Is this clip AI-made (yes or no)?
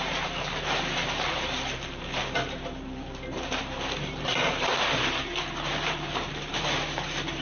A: yes